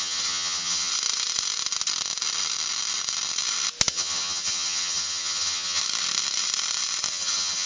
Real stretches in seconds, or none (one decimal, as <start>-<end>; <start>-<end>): 0.9-3.9; 5.8-7.1